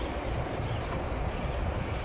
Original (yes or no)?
yes